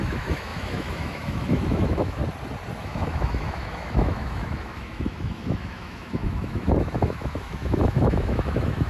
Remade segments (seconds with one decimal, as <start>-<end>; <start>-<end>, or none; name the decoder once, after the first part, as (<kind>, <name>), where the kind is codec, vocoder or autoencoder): 0.0-2.2 (autoencoder, DAC-VAE); 2.8-8.9